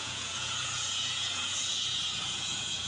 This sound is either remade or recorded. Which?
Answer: remade